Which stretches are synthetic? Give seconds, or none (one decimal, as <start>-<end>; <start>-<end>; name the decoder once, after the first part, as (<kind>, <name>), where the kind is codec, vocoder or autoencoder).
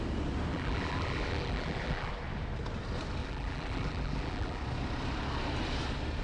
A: 0.5-2.1 (vocoder, BigVGAN v2); 3.2-4.6